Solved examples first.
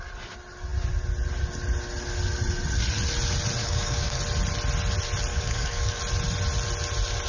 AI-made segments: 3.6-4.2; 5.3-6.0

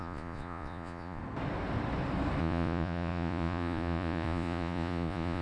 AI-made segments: 0.0-1.2; 2.4-5.4

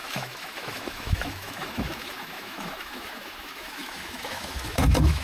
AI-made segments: 0.0-5.2

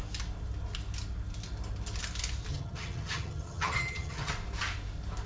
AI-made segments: 2.5-4.3

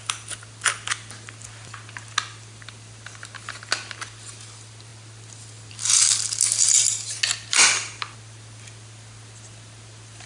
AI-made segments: none